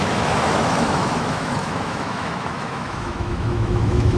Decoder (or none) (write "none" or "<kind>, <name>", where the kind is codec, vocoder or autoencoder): autoencoder, DAC-VAE